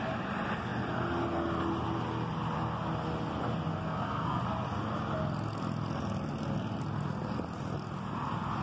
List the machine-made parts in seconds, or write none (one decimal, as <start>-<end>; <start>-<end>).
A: 3.7-4.4